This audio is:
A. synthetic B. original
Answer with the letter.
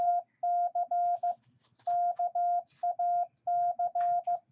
B